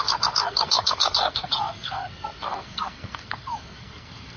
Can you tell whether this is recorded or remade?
remade